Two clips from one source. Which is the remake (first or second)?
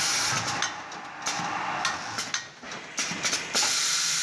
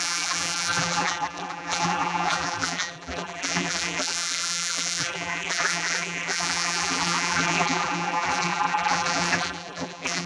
second